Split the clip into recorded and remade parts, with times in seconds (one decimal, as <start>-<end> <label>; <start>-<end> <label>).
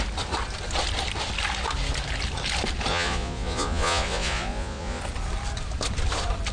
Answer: 0.0-2.9 recorded; 2.9-5.0 remade; 5.0-6.5 recorded